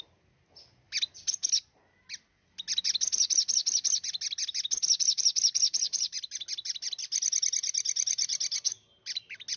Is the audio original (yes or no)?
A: yes